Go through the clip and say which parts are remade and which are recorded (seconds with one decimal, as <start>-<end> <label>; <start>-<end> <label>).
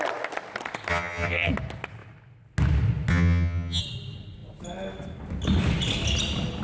0.0-0.9 recorded; 0.9-1.5 remade; 1.5-3.1 recorded; 3.1-3.8 remade; 3.8-6.6 recorded